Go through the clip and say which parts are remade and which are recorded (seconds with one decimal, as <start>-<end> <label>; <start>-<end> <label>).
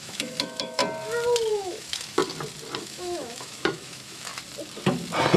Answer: 0.0-0.8 remade; 0.8-1.5 recorded; 1.5-2.2 remade; 2.2-2.8 recorded; 2.8-4.3 remade; 4.3-5.4 recorded